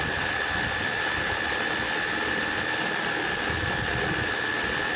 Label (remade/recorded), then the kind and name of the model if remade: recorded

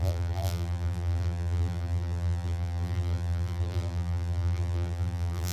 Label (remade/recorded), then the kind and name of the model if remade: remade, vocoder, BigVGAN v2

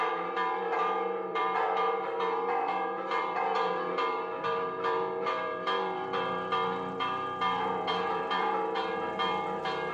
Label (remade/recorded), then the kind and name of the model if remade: remade, vocoder, BigVGAN v2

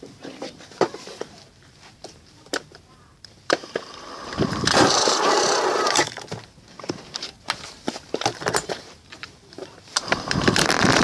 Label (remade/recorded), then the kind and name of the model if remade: remade, vocoder, BigVGAN v2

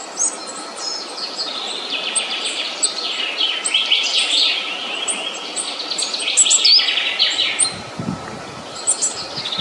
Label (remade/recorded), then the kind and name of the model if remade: recorded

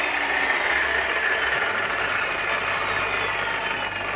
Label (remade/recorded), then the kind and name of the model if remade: recorded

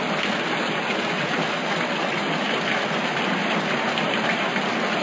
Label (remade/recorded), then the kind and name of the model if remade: recorded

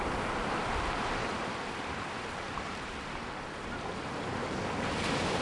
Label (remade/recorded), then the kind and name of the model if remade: remade, vocoder, BigVGAN v2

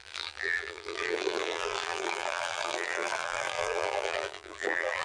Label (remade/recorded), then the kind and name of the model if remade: remade, vocoder, BigVGAN v2